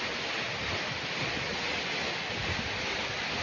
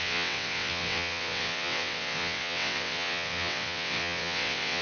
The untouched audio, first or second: first